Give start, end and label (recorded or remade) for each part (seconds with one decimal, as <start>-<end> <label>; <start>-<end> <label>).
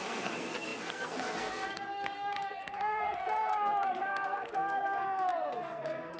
0.0-6.2 remade